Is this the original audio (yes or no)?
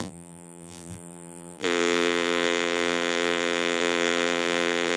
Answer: no